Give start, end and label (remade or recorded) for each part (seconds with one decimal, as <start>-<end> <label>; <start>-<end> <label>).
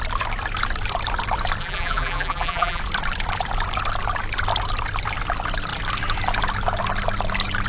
0.0-1.6 recorded; 1.6-2.8 remade; 2.8-7.7 recorded